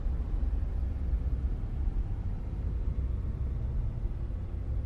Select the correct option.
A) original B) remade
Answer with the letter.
A